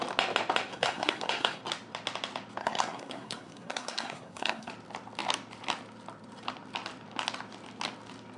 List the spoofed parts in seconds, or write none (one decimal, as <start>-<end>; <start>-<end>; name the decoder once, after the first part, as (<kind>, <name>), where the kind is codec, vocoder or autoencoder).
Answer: 0.7-1.6 (codec, SNAC); 2.6-4.7